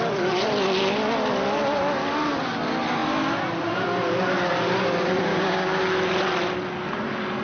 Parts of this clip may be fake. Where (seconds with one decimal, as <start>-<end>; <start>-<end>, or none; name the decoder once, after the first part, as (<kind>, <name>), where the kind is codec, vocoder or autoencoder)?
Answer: 5.3-5.8 (codec, DAC)